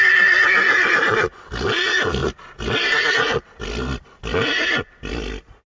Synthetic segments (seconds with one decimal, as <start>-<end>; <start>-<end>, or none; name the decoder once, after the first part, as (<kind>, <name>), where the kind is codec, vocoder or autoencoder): none